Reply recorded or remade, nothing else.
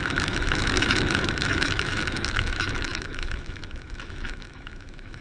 remade